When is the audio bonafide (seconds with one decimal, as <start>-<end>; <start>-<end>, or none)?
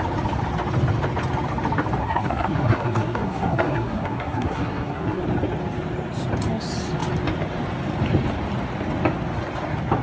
0.0-2.0; 5.2-10.0